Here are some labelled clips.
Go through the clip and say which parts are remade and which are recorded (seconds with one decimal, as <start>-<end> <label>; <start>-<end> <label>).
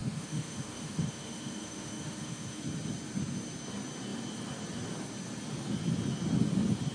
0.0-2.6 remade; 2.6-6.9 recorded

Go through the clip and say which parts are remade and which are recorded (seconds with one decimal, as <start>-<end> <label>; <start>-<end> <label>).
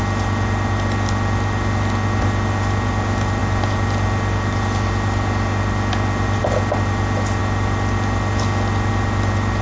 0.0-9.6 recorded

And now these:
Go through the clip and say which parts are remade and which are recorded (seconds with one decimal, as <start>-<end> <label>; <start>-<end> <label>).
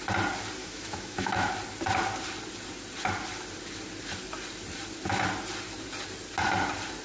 0.0-0.6 recorded; 0.6-1.5 remade; 1.5-7.0 recorded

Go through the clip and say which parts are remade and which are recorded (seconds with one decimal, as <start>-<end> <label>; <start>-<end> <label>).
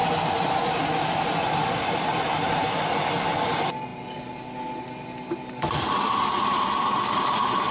0.0-7.7 recorded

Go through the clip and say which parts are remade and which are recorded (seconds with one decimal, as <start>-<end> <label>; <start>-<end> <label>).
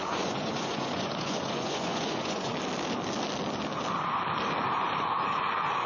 0.0-2.5 remade; 2.5-5.0 recorded; 5.0-5.9 remade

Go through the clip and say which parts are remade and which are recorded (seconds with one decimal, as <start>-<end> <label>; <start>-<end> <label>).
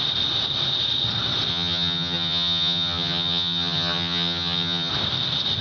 0.0-1.5 recorded; 1.5-4.9 remade; 4.9-5.6 recorded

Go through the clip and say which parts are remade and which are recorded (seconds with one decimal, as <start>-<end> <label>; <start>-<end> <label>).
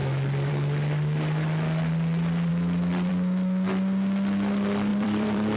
0.0-4.9 recorded; 4.9-5.6 remade